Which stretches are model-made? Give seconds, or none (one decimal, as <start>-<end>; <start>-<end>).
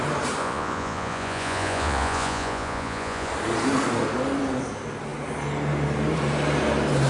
0.4-3.3